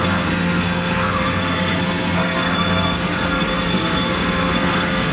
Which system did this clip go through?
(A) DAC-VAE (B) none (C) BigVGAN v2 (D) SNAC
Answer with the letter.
D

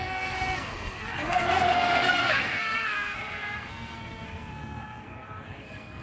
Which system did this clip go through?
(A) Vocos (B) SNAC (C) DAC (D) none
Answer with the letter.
B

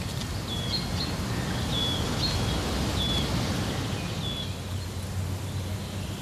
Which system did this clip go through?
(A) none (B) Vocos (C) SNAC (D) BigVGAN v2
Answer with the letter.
A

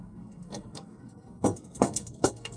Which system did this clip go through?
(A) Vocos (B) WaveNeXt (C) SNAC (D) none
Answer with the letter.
C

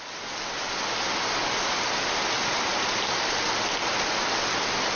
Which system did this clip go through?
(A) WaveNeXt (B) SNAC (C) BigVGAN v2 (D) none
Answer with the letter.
D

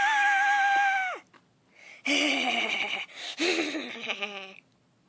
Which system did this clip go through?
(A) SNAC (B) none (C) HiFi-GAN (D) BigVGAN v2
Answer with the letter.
B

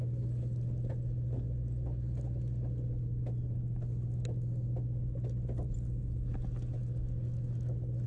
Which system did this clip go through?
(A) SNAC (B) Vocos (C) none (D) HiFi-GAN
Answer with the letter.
C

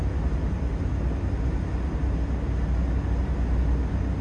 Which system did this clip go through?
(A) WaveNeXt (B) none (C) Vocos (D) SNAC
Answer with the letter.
B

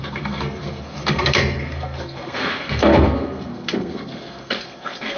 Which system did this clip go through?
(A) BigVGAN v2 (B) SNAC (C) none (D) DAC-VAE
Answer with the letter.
B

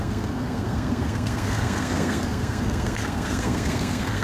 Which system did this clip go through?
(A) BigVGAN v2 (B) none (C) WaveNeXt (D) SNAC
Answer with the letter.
D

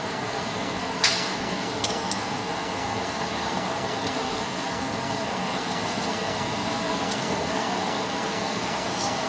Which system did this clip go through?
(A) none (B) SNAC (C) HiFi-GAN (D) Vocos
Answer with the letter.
B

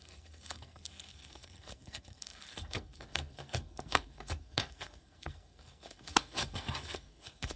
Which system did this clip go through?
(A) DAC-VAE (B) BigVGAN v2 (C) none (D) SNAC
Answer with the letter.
D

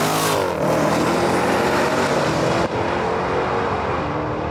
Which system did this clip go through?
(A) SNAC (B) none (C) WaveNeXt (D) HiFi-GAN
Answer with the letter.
B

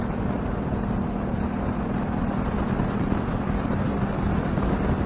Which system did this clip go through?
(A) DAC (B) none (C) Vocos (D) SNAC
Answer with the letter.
B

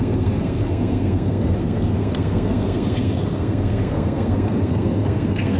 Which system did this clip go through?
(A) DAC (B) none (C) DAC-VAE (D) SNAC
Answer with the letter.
D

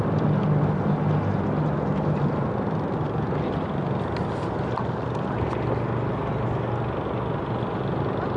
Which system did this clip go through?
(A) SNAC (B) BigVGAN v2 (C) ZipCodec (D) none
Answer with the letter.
D